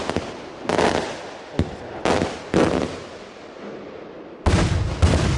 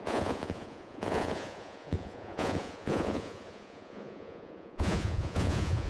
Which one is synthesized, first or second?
second